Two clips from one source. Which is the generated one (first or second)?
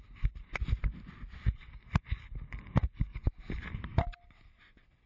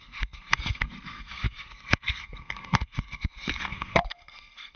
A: second